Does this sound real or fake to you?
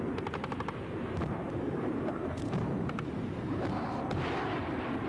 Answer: fake